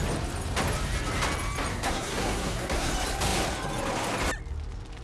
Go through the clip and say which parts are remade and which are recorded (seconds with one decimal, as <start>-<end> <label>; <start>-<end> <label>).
0.0-1.7 recorded; 1.7-2.9 remade; 2.9-5.0 recorded